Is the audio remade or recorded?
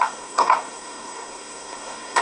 remade